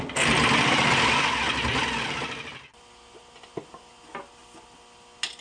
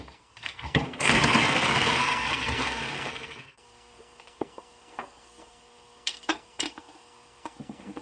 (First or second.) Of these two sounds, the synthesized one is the second